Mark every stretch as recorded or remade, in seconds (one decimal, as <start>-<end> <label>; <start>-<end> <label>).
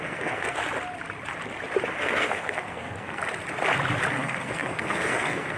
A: 0.0-0.6 remade; 0.6-2.0 recorded; 2.0-3.2 remade; 3.2-4.1 recorded; 4.1-5.6 remade